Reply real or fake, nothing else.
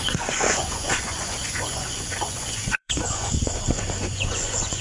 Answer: fake